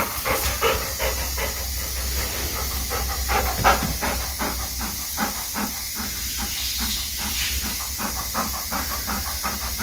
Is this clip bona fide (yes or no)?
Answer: yes